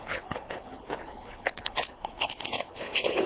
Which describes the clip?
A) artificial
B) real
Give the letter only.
A